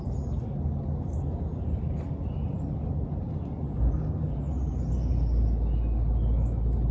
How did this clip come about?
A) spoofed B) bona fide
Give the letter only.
B